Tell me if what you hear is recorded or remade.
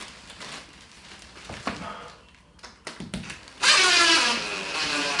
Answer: recorded